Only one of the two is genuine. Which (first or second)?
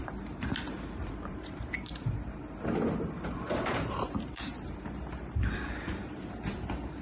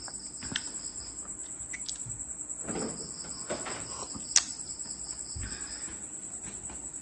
second